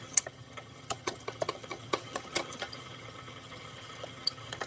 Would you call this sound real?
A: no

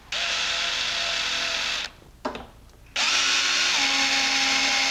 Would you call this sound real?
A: yes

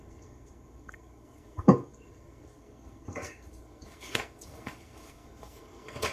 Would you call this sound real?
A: no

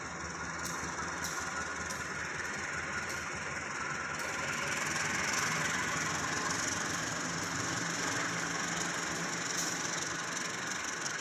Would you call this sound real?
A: yes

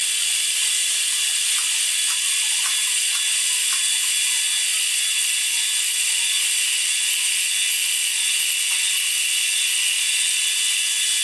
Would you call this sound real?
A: yes